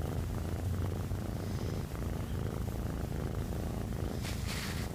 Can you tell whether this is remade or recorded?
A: recorded